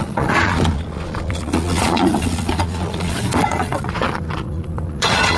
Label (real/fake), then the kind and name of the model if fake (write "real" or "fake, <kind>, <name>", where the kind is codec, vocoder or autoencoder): fake, vocoder, Vocos